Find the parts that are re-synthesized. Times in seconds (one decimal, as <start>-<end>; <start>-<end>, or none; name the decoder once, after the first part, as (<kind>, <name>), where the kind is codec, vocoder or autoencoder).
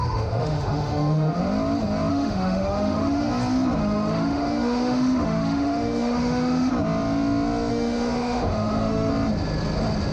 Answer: 0.0-1.4 (autoencoder, DAC-VAE); 2.1-3.3; 3.8-6.7; 7.7-9.1